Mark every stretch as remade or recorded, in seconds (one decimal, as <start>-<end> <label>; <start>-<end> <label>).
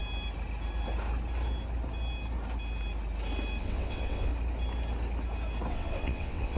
0.0-3.6 recorded; 3.6-4.3 remade; 4.3-5.7 recorded; 5.7-6.6 remade